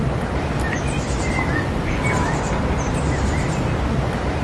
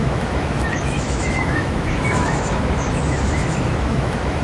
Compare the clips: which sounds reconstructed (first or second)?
second